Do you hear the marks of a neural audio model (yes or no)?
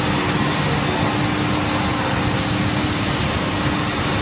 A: no